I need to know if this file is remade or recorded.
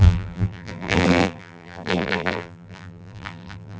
remade